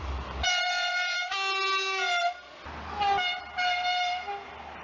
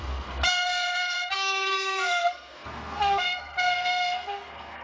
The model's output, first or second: second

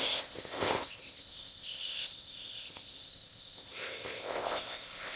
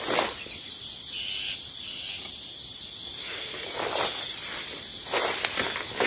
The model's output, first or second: first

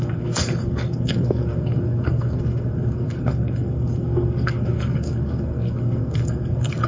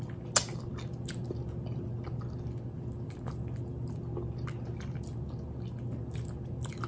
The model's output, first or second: first